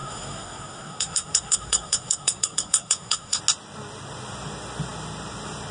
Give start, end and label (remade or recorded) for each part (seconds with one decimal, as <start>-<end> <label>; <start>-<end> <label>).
0.0-3.4 remade; 3.4-5.7 recorded